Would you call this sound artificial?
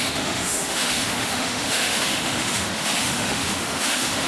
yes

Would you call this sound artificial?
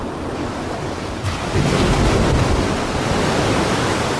no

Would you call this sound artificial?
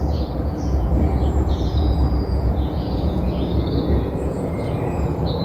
yes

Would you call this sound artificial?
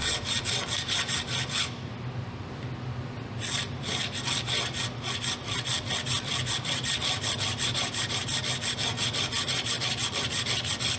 no